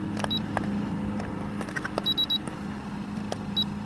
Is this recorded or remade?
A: recorded